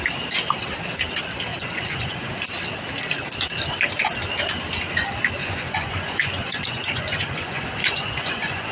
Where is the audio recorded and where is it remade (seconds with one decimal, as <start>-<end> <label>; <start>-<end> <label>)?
0.0-1.5 recorded; 1.5-2.3 remade; 2.3-5.4 recorded; 5.4-8.7 remade